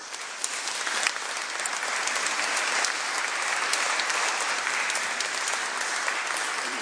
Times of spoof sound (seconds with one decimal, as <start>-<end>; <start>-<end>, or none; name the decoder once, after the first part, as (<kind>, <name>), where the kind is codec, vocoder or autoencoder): none